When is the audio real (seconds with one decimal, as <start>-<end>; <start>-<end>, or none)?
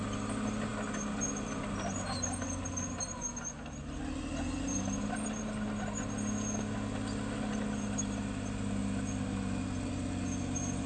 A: 0.0-10.9